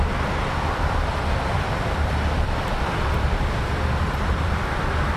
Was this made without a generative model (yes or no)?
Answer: no